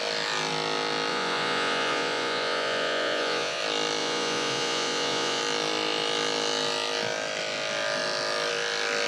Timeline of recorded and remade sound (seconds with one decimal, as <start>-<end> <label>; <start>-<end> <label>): 0.0-1.1 recorded; 1.1-3.6 remade; 3.6-4.0 recorded; 4.0-5.4 remade; 5.4-9.1 recorded